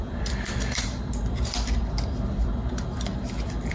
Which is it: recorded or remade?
remade